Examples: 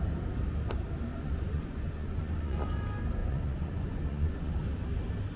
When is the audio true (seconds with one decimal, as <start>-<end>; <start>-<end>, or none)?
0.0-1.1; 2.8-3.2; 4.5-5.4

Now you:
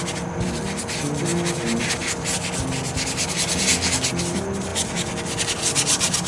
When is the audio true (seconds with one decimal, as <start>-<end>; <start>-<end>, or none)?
0.0-6.3

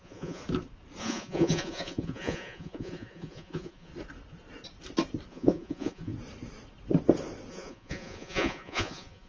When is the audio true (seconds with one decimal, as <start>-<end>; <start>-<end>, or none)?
0.4-1.0; 3.9-5.3; 6.1-7.5